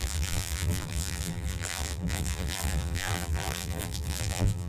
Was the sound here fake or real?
fake